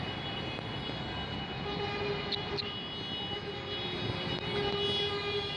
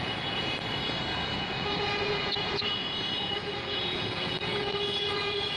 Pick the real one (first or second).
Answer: first